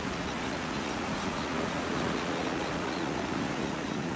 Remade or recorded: remade